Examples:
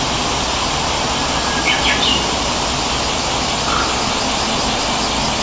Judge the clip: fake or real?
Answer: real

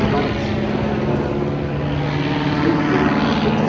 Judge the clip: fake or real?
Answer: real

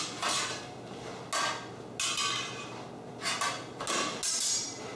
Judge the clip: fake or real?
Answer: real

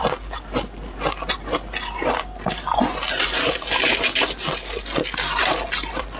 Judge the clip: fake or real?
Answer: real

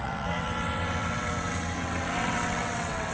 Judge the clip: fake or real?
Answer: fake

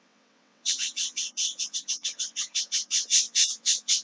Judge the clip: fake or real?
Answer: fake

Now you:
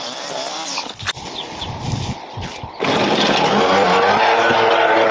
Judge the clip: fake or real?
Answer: real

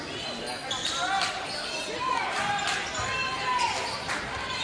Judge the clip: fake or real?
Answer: real